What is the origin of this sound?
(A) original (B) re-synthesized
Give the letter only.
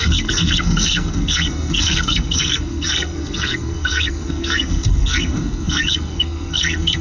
B